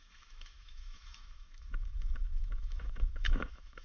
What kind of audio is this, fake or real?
fake